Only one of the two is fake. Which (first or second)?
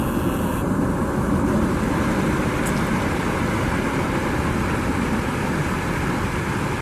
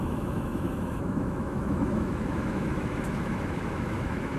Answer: second